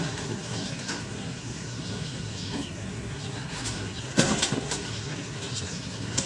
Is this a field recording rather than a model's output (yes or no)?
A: no